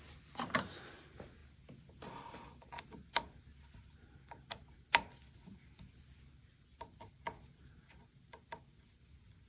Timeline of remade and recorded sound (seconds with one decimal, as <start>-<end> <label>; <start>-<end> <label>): 0.0-9.5 recorded